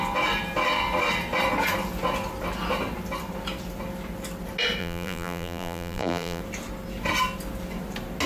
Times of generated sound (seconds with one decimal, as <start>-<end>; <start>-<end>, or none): 4.8-6.4